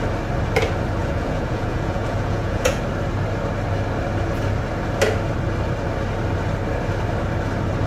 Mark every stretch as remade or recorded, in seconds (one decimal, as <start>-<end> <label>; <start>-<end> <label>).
0.0-1.0 recorded; 1.0-2.8 remade; 2.8-7.9 recorded